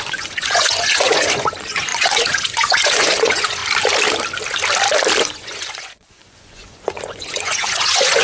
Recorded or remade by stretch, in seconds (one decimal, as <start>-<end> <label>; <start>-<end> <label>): 0.0-3.6 remade; 3.6-5.2 recorded; 5.2-8.2 remade